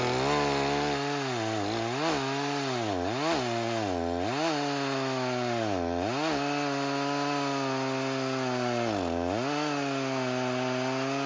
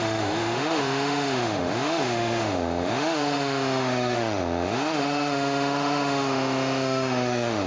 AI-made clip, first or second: second